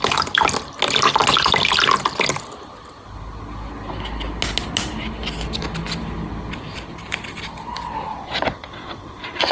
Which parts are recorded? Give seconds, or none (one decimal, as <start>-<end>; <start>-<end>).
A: 0.0-8.1